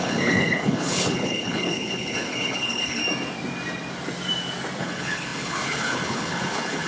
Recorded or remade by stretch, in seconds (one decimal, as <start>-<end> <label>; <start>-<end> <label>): 0.0-3.0 remade; 3.0-4.8 recorded; 4.8-6.9 remade